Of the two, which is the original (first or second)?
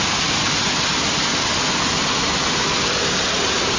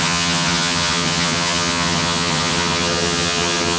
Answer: first